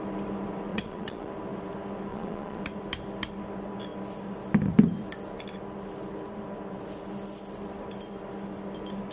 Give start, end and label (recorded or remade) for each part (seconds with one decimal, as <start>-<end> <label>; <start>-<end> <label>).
0.0-0.7 recorded; 0.7-1.3 remade; 1.3-2.1 recorded; 2.1-2.6 remade; 2.6-9.1 recorded